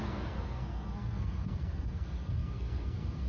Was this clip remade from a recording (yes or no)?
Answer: yes